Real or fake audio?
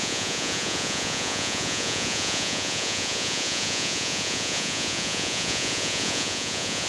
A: fake